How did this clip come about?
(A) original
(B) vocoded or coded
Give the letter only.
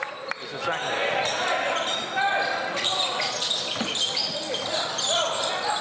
A